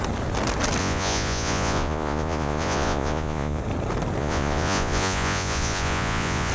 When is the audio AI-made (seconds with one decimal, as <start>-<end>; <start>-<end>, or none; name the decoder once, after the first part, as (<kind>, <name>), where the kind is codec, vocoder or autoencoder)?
0.8-3.6 (vocoder, Vocos); 4.2-6.5